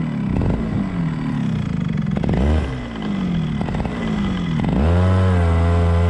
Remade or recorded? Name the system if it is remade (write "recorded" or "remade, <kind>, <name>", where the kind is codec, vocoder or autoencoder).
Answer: recorded